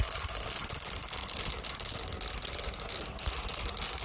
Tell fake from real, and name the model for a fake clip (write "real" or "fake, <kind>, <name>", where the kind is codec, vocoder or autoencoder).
real